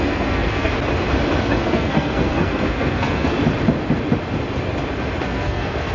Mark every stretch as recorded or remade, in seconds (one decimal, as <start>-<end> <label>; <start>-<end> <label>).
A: 0.0-0.7 remade; 0.7-1.4 recorded; 1.4-3.3 remade; 3.3-5.2 recorded; 5.2-5.9 remade